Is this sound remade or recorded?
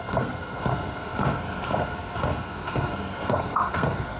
remade